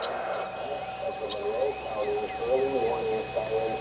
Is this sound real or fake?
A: real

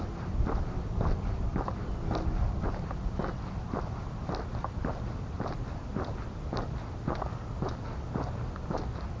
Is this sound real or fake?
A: real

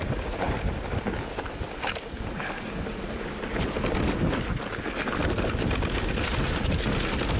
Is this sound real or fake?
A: real